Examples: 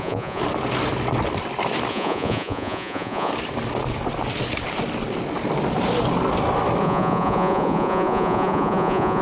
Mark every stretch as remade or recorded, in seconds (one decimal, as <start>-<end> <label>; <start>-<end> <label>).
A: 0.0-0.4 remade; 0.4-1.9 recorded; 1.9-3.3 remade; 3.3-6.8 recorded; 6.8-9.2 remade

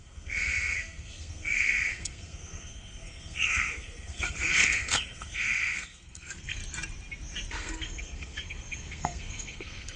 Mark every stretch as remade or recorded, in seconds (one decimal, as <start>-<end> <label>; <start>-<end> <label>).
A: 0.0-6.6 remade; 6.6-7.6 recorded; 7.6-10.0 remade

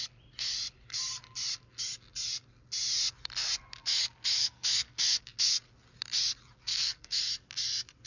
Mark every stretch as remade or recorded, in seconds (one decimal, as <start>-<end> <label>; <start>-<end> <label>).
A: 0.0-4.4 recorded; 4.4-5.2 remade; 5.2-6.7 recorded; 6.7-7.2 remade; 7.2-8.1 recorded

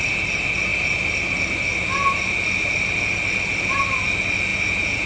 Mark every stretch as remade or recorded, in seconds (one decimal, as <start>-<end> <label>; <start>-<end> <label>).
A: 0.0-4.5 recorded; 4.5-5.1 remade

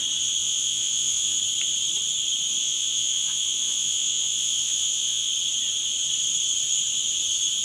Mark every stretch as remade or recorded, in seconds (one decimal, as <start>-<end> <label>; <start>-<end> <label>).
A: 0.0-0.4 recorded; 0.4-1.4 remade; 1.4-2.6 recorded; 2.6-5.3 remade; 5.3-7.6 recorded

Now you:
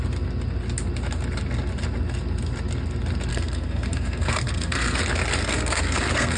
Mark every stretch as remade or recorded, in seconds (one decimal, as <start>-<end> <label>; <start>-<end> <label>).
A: 0.0-3.3 recorded; 3.3-5.0 remade; 5.0-5.4 recorded; 5.4-6.4 remade

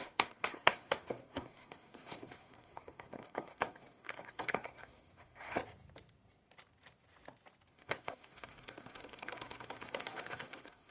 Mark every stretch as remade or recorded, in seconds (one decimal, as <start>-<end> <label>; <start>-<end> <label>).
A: 0.0-5.6 remade; 5.6-7.7 recorded; 7.7-10.9 remade

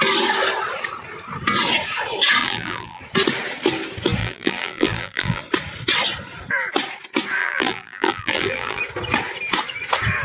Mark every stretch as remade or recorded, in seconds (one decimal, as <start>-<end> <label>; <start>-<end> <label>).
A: 0.0-2.4 recorded; 2.4-3.0 remade; 3.0-4.2 recorded; 4.2-5.4 remade; 5.4-7.4 recorded; 7.4-8.8 remade; 8.8-10.2 recorded